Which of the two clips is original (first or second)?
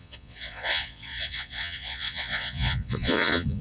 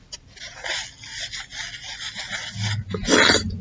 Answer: second